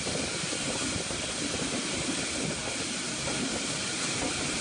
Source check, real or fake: real